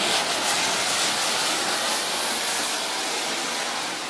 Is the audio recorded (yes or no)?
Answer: yes